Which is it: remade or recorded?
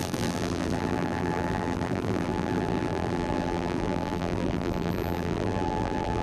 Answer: remade